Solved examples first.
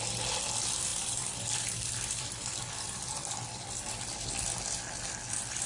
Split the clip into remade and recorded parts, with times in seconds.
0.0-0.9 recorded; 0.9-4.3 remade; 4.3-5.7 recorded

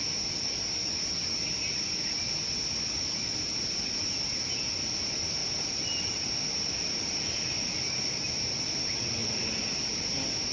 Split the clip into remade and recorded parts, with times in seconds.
0.0-5.4 recorded; 5.4-7.8 remade; 7.8-9.2 recorded; 9.2-10.0 remade; 10.0-10.5 recorded

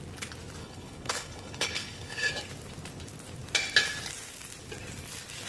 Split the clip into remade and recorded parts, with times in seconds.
0.0-0.6 recorded; 0.6-2.3 remade; 2.3-5.5 recorded

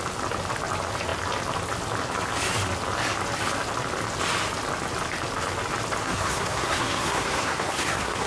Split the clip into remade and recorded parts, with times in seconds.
0.0-6.0 recorded; 6.0-8.3 remade